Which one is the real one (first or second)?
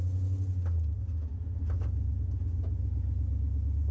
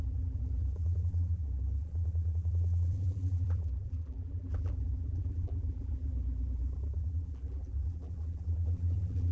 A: first